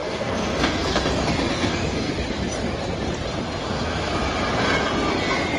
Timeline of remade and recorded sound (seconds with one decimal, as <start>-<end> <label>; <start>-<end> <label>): 0.0-1.0 remade; 1.0-1.5 recorded; 1.5-2.1 remade; 2.1-3.6 recorded; 3.6-4.1 remade; 4.1-5.6 recorded